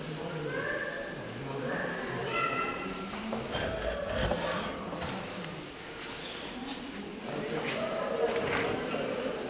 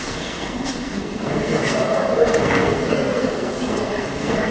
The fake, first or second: second